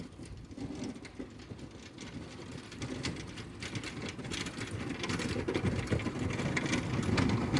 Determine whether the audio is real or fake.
real